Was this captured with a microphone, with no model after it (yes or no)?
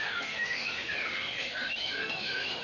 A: no